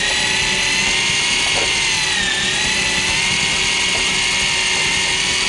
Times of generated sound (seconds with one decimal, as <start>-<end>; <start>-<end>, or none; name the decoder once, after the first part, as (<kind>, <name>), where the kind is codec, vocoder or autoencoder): none